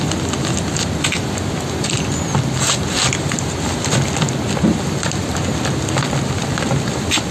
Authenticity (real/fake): real